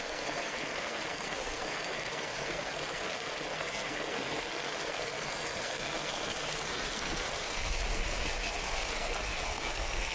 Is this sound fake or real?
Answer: fake